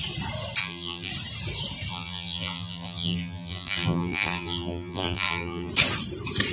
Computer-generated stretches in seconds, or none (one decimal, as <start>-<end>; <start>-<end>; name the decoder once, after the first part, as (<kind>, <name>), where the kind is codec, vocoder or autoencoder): 0.6-1.1 (vocoder, BigVGAN v2); 1.9-5.7